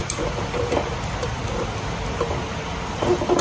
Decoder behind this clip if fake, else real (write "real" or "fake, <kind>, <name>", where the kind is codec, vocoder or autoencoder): real